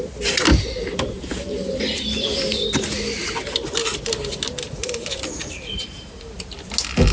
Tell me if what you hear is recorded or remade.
recorded